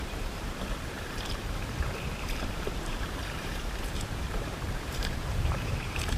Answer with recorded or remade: remade